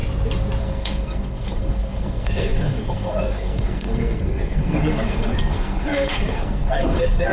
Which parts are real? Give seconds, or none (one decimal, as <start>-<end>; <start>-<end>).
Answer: 0.0-0.6